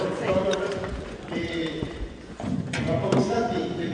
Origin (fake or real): fake